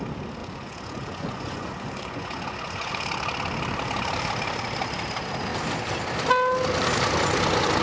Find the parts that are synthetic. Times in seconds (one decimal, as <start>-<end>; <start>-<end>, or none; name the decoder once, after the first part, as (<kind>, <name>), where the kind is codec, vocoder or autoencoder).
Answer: 0.4-2.9 (vocoder, Vocos)

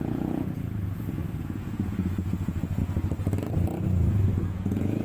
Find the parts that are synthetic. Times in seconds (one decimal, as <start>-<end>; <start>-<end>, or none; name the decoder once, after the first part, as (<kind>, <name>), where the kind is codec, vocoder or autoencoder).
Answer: 0.0-2.8 (vocoder, Vocos); 3.5-5.0

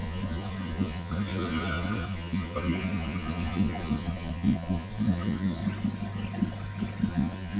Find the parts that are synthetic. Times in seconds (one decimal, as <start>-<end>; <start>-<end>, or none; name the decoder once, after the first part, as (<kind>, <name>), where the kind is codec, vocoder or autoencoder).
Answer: 0.0-5.6 (vocoder, Vocos); 7.1-7.6